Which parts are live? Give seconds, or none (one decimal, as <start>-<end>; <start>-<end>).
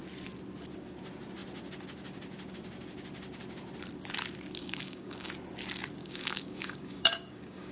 0.0-4.6; 5.3-6.0